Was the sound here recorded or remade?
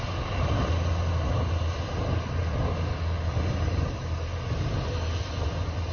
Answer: recorded